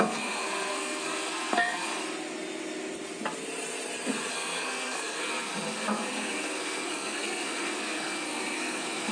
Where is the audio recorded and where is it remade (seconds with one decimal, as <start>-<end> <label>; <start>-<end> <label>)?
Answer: 0.0-1.9 remade; 1.9-4.3 recorded; 4.3-9.1 remade